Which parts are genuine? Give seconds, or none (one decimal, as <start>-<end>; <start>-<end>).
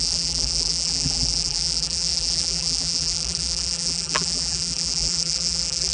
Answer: none